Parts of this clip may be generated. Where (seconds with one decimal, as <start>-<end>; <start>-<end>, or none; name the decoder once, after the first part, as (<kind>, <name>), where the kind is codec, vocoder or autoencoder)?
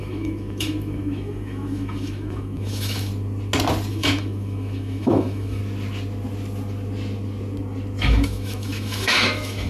0.0-3.1 (autoencoder, DAC-VAE); 3.9-5.6; 8.0-9.7